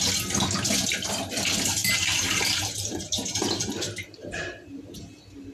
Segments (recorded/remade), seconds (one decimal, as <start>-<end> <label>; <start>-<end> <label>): 0.0-1.8 recorded; 1.8-5.1 remade; 5.1-5.5 recorded